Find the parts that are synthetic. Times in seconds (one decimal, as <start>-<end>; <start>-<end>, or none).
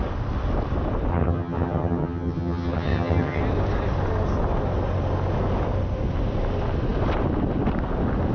1.1-3.4